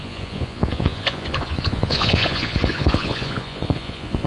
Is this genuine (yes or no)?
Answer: no